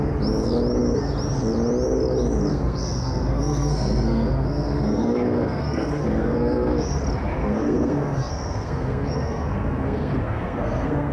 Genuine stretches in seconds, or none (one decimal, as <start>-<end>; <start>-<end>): 0.0-2.5; 7.0-7.4